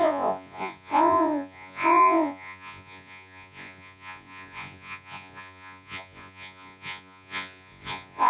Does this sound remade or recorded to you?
remade